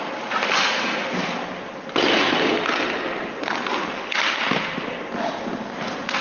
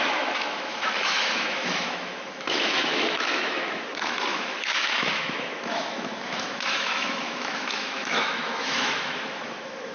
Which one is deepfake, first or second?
second